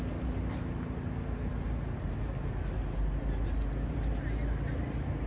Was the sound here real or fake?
real